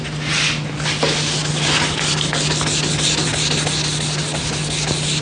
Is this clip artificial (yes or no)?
no